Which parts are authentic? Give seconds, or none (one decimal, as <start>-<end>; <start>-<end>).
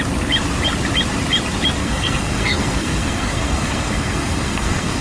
0.0-1.8